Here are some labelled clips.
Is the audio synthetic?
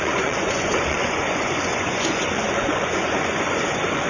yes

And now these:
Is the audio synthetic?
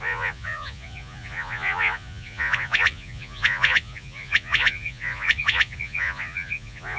yes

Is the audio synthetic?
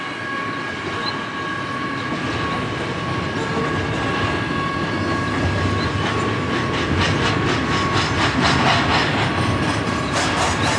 no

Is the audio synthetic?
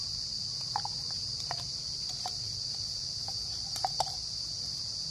yes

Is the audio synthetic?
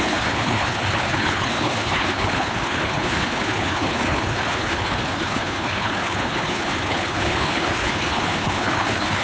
yes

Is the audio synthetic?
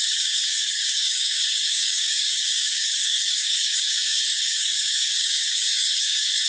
yes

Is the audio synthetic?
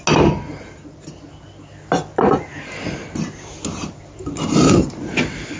no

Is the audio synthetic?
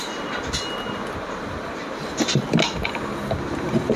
no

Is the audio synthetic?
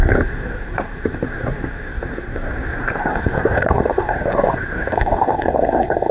yes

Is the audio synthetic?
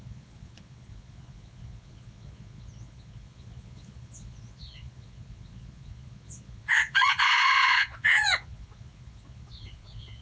yes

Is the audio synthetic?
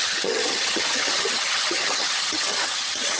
yes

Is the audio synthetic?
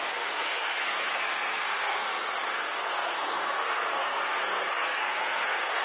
yes